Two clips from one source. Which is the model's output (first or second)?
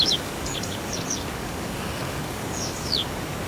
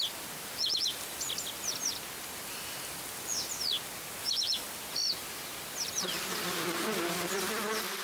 first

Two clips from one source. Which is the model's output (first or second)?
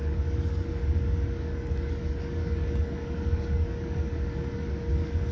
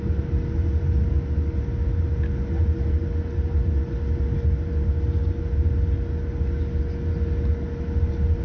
first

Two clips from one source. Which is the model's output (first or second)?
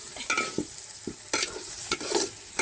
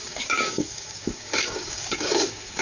second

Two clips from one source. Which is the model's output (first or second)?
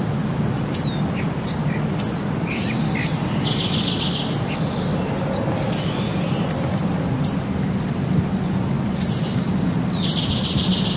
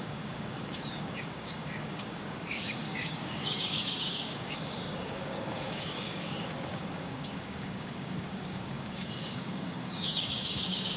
second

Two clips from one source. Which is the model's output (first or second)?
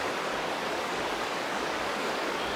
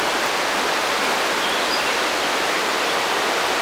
first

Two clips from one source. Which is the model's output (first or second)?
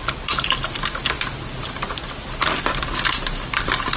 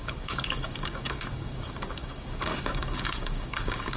second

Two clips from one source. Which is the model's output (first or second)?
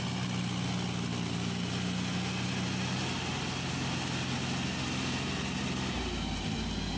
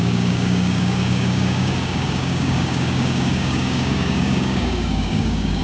second